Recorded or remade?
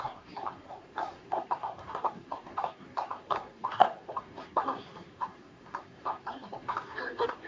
remade